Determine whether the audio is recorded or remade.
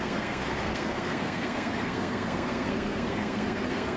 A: remade